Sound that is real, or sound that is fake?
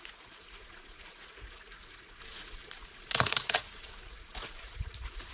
fake